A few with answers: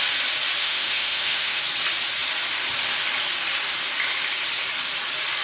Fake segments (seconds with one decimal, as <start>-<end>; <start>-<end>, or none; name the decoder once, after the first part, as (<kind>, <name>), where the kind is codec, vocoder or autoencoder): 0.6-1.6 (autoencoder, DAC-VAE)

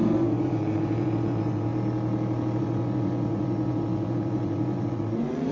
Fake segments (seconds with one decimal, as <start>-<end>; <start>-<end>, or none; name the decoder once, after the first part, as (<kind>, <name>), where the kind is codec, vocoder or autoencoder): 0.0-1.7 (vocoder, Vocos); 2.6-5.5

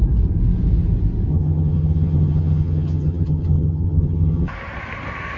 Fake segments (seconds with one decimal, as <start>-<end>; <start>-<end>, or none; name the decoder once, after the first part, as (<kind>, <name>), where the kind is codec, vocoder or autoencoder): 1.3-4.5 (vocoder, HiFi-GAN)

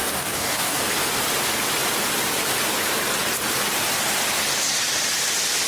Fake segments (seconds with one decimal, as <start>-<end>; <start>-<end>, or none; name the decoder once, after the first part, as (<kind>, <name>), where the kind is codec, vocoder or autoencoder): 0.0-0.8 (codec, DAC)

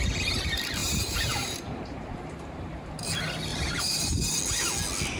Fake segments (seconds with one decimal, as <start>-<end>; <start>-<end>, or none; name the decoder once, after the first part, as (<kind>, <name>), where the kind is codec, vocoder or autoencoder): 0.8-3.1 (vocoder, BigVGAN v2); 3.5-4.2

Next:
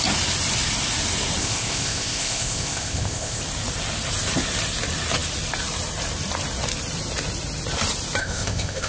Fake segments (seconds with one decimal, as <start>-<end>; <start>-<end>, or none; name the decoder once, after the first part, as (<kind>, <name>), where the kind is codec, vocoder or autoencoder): 1.4-3.4 (codec, ZipCodec); 8.2-8.9